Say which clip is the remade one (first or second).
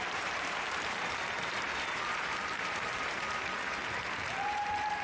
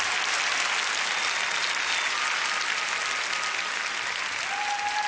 first